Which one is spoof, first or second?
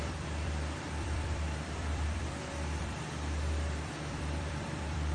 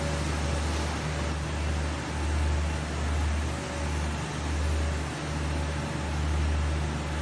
first